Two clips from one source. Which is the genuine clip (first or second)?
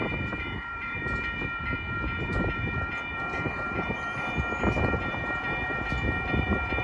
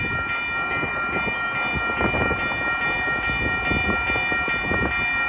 second